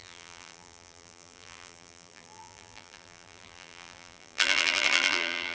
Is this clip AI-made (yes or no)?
yes